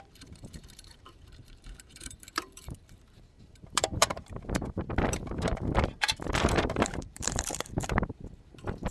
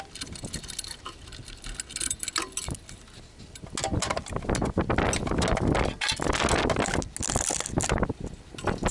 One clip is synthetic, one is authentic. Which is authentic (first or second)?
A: second